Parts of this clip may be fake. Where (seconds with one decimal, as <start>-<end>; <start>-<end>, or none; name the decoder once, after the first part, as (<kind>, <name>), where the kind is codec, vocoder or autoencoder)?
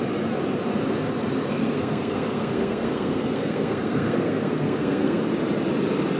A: 1.6-5.2 (codec, SNAC)